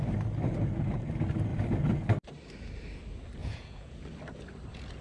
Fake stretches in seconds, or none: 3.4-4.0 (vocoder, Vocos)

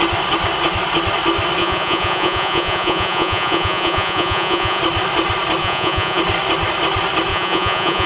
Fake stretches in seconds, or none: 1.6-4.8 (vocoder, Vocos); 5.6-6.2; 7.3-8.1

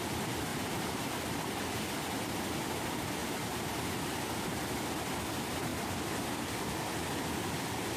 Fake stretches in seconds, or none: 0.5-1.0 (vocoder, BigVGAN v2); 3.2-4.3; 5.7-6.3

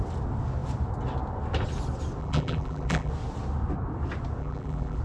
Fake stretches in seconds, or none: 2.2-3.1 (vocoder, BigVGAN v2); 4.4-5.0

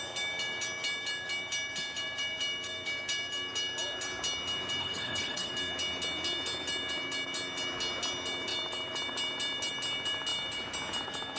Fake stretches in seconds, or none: 4.8-5.5 (codec, HILCodec)

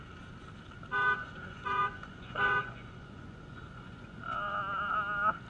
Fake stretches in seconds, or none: 0.9-4.2 (vocoder, Vocos)

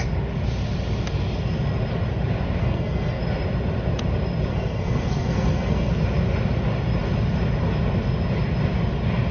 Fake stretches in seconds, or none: 2.6-3.2 (codec, SNAC); 4.5-5.9

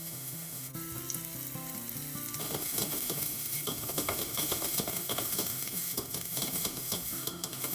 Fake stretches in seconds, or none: 0.0-0.7 (autoencoder, DAC-VAE); 2.4-7.7